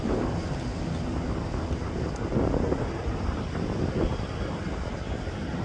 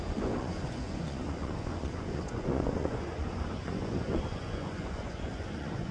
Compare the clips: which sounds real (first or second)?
first